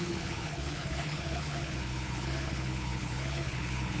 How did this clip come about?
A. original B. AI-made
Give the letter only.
B